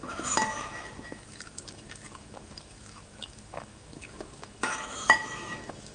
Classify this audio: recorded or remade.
remade